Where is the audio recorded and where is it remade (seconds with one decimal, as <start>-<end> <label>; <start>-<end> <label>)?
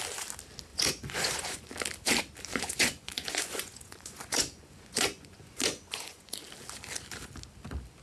0.0-0.7 recorded; 0.7-1.7 remade; 1.7-2.5 recorded; 2.5-6.4 remade; 6.4-8.0 recorded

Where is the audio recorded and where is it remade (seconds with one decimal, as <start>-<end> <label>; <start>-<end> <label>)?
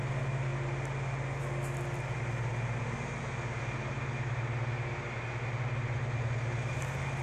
0.0-7.2 recorded